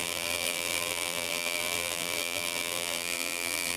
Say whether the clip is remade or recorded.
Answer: remade